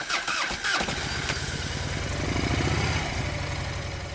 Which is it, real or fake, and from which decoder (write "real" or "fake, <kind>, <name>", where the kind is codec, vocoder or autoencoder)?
real